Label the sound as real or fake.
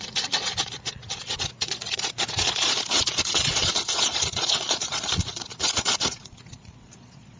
fake